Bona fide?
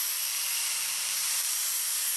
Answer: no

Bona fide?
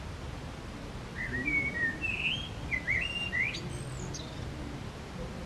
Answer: yes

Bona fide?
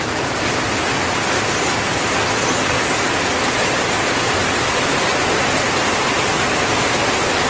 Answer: yes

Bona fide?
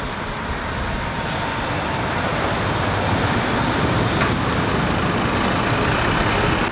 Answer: yes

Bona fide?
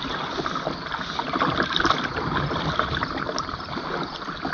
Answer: yes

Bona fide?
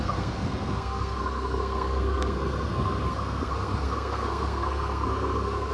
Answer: no